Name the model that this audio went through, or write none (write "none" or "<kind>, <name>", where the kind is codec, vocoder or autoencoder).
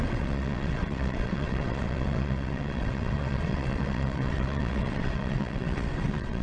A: vocoder, WaveNeXt